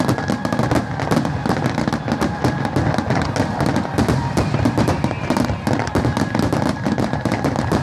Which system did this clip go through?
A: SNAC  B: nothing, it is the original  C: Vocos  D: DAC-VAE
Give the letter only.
B